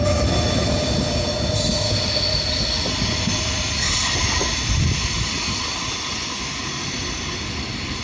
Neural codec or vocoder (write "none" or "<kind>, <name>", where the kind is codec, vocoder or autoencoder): none